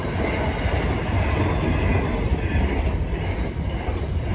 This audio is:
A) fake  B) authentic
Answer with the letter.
B